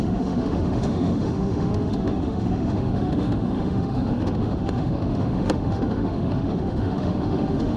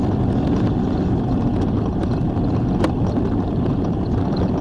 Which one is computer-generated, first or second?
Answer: first